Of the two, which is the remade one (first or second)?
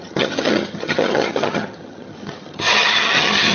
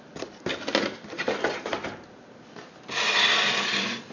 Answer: first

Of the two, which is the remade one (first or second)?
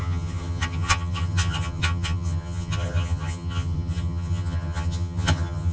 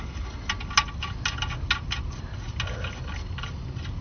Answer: first